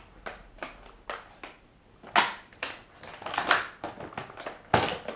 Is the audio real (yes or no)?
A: yes